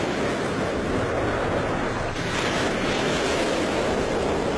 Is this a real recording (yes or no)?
yes